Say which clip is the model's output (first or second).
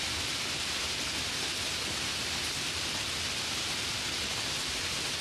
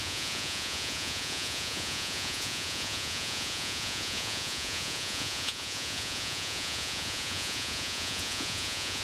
second